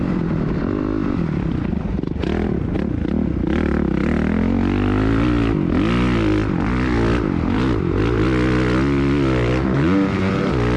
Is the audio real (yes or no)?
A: yes